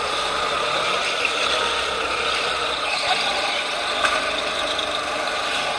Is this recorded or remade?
recorded